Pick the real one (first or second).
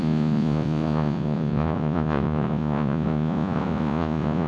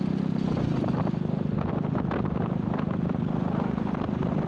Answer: second